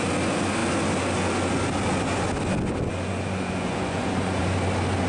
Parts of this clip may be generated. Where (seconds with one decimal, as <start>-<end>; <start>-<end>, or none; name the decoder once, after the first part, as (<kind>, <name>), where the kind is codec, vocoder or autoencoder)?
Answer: 3.1-4.4 (vocoder, Vocos)